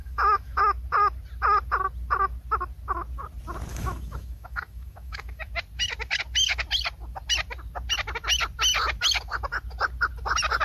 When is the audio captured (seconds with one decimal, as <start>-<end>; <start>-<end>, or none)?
0.6-3.7; 5.5-10.6